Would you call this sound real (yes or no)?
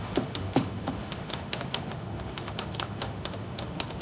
no